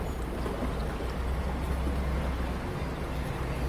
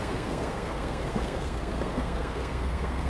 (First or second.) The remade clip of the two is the second